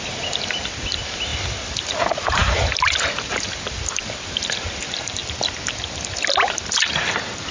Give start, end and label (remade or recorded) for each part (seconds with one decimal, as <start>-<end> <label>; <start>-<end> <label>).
0.0-5.2 remade; 5.2-5.8 recorded; 5.8-7.5 remade